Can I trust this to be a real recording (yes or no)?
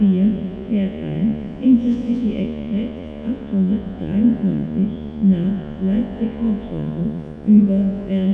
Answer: no